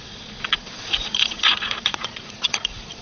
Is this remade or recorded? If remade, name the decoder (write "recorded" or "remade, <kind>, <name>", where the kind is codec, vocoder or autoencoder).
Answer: remade, vocoder, Vocos